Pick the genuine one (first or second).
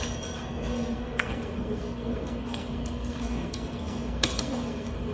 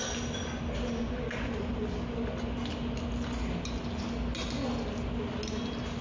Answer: second